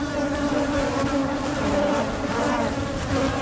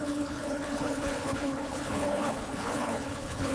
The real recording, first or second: first